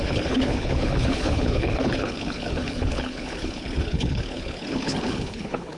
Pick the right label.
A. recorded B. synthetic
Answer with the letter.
B